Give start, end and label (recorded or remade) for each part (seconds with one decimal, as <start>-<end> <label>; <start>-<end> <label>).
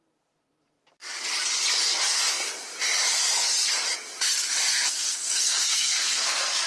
0.0-4.7 recorded; 4.7-6.7 remade